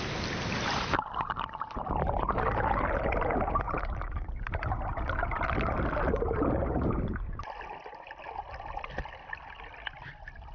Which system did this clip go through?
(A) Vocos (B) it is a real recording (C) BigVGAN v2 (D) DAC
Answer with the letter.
B